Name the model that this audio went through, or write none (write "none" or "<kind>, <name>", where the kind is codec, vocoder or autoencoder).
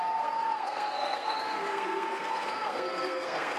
codec, SNAC